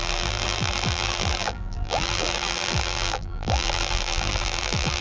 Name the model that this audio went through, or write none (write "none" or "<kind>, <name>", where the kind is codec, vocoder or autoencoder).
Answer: vocoder, BigVGAN v2